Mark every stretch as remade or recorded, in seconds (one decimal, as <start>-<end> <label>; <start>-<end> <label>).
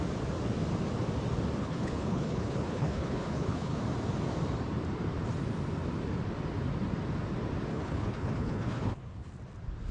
0.0-1.6 recorded; 1.6-3.8 remade; 3.8-7.7 recorded; 7.7-9.3 remade; 9.3-9.9 recorded